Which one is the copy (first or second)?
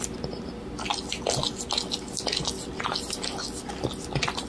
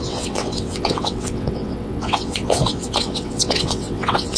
second